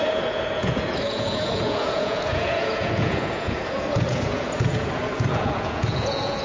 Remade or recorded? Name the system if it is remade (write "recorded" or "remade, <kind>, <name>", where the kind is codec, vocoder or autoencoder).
remade, vocoder, Vocos